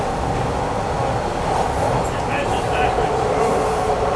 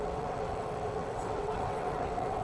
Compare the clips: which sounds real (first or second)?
first